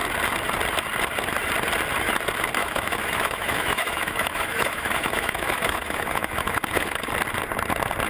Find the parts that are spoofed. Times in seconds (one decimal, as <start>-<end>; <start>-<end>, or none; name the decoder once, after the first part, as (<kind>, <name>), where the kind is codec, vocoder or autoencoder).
2.6-7.1 (autoencoder, DAC-VAE)